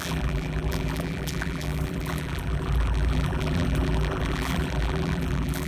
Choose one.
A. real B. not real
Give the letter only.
B